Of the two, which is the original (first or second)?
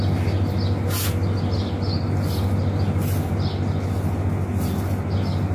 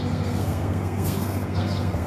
first